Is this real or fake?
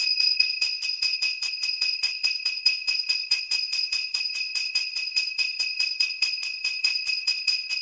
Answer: fake